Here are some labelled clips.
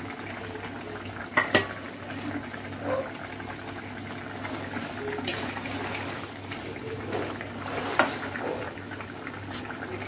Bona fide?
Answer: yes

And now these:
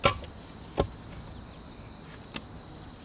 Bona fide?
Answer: yes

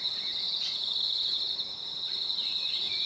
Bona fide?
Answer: no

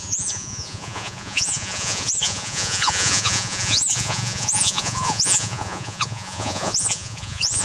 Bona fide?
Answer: no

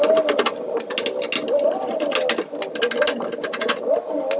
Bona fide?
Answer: yes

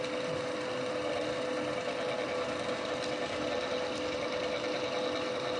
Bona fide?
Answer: yes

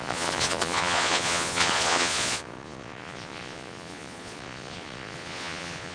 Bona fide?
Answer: no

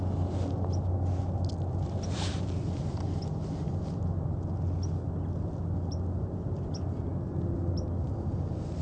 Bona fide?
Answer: yes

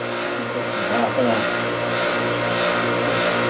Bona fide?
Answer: yes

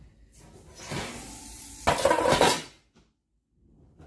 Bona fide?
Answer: yes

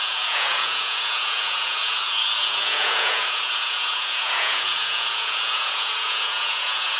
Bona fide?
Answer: no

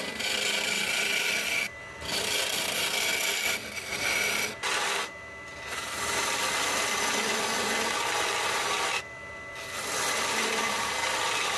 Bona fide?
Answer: yes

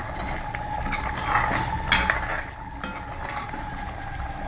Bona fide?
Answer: yes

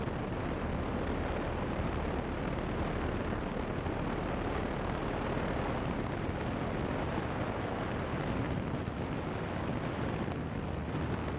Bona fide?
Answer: yes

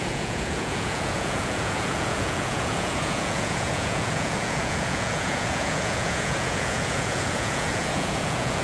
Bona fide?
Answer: no